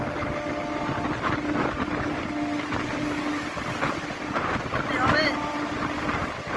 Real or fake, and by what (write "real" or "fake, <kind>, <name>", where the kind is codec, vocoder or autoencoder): real